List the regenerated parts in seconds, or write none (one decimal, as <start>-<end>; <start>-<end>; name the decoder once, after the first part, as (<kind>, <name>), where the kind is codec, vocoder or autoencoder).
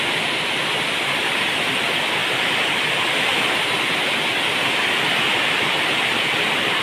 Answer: 0.0-2.2 (vocoder, BigVGAN v2); 4.1-6.8